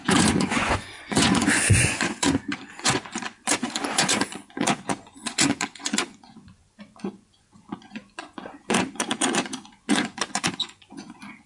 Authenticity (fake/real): fake